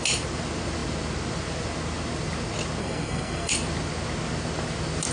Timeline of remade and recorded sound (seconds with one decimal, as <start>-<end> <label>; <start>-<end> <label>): 0.0-2.8 recorded; 2.8-3.5 remade; 3.5-5.1 recorded